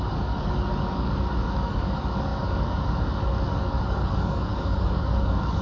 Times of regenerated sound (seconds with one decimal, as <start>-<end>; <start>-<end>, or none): 0.0-5.6